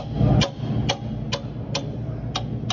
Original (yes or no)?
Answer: yes